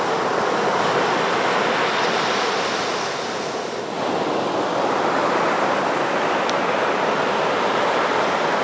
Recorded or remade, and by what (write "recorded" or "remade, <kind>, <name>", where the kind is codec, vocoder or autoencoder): recorded